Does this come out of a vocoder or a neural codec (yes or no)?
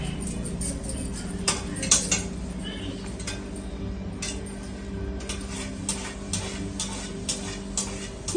no